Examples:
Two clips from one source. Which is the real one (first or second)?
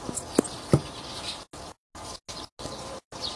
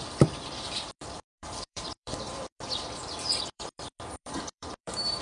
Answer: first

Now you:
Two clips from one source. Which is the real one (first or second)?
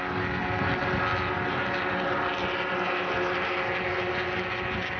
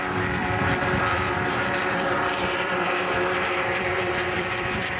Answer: first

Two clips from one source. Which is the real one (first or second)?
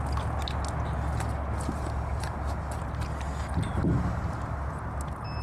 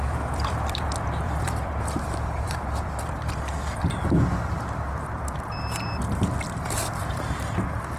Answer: first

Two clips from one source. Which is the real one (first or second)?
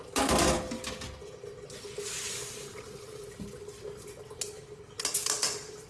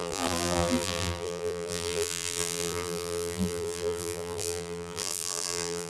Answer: first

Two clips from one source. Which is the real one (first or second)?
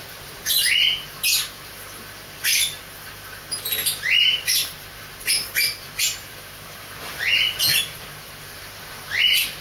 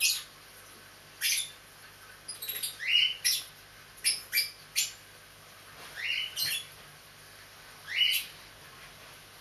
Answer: second